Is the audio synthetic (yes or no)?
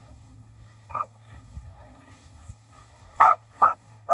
yes